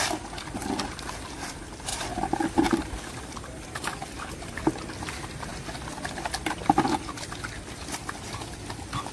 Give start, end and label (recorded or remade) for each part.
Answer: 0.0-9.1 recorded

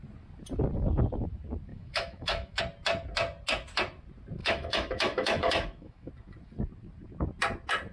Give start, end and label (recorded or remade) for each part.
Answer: 0.0-1.7 recorded; 1.7-2.6 remade; 2.6-4.4 recorded; 4.4-6.1 remade; 6.1-7.9 recorded

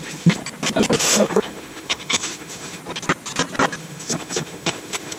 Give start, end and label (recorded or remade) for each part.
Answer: 0.0-0.4 remade; 0.4-1.0 recorded; 1.0-2.8 remade; 2.8-3.8 recorded; 3.8-5.2 remade

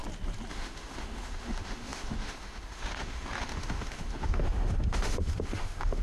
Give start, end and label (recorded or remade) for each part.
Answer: 0.0-0.5 recorded; 0.5-6.0 remade

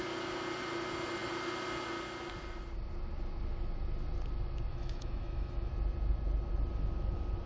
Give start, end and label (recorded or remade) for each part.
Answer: 0.0-4.7 recorded; 4.7-5.7 remade; 5.7-7.5 recorded

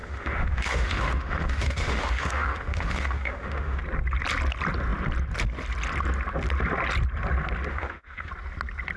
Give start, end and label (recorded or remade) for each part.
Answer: 0.0-3.8 remade; 3.8-7.7 recorded; 7.7-8.3 remade; 8.3-9.0 recorded

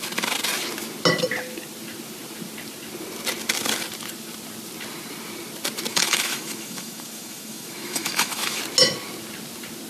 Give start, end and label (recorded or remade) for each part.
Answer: 0.0-5.9 recorded; 5.9-8.6 remade; 8.6-9.9 recorded